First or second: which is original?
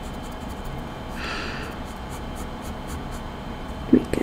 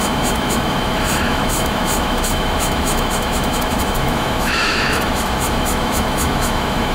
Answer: first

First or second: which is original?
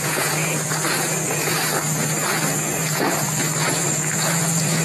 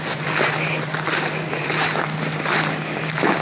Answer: second